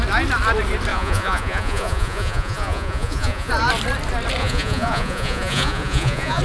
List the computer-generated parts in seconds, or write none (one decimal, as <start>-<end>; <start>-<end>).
0.9-3.5; 4.4-6.4